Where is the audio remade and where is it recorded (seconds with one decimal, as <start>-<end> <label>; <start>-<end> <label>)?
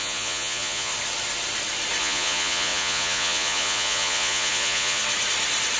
0.0-0.9 remade; 0.9-2.0 recorded; 2.0-5.0 remade; 5.0-5.8 recorded